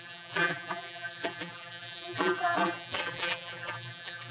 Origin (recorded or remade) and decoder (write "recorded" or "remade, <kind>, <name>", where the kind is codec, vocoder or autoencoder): remade, vocoder, BigVGAN v2